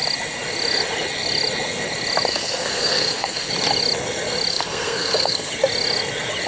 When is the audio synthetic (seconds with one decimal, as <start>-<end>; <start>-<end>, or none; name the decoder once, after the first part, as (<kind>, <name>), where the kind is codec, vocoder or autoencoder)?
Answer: 2.3-3.5 (codec, SNAC); 4.5-5.5